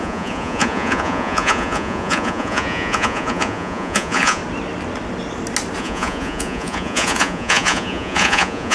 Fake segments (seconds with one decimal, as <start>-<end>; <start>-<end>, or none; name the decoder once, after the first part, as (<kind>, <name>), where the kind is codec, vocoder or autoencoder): 0.0-4.4 (vocoder, Vocos); 5.8-8.7